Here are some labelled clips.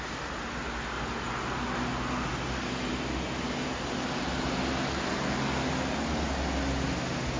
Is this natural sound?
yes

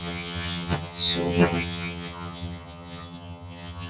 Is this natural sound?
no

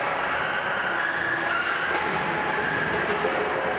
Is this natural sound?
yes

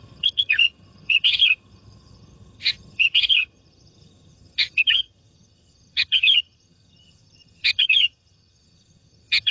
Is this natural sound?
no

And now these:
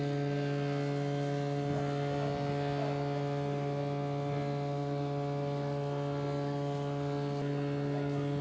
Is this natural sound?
yes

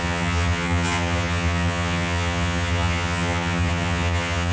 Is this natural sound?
no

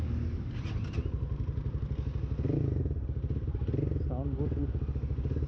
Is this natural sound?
yes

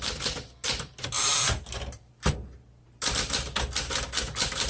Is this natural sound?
yes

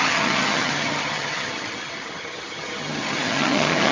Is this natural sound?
no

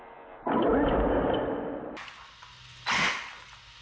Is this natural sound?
yes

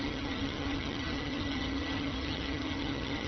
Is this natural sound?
no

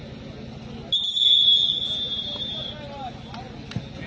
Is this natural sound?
yes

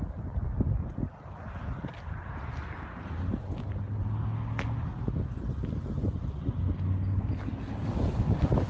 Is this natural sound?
yes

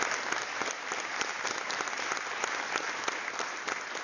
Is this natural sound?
yes